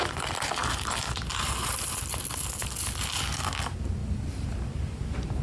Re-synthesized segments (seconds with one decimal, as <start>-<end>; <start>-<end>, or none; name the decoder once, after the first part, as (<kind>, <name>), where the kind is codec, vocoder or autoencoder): 4.0-5.0 (vocoder, BigVGAN v2)